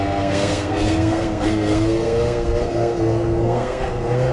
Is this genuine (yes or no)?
no